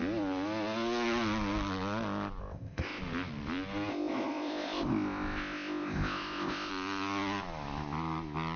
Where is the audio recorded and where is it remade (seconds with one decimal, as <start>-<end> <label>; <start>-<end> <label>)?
0.0-2.4 recorded; 2.4-3.0 remade; 3.0-3.9 recorded; 3.9-6.7 remade; 6.7-8.6 recorded